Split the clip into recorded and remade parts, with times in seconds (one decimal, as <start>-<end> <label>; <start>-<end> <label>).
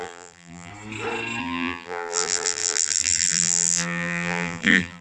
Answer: 0.0-0.7 remade; 0.7-1.4 recorded; 1.4-5.0 remade